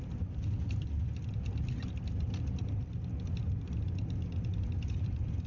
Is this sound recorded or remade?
recorded